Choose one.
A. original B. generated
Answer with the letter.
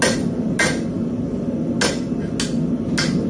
A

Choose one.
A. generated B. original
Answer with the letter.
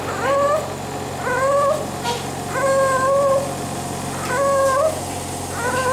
B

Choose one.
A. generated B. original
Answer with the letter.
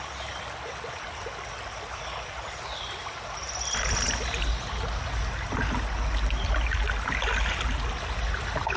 B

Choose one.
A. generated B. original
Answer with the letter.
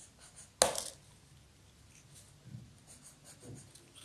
B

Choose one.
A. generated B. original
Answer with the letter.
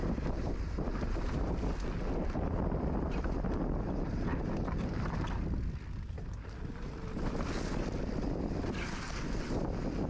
B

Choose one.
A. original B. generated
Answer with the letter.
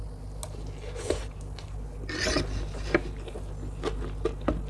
A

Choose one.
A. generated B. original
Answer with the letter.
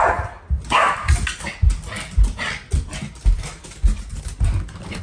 B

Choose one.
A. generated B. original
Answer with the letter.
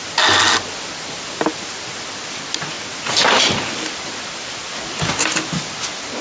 B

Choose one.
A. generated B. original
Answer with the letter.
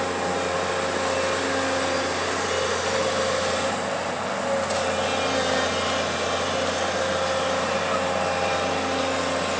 B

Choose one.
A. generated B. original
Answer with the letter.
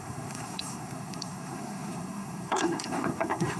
A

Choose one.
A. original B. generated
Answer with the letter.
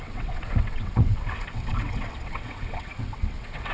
B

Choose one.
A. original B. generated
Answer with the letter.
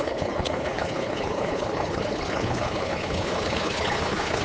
B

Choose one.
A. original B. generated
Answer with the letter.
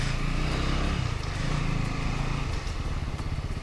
A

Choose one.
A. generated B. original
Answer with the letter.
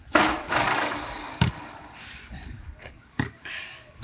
A